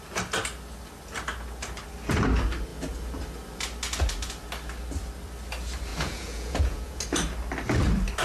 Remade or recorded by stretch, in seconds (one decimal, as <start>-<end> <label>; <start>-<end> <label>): 0.0-5.9 recorded; 5.9-7.0 remade; 7.0-8.2 recorded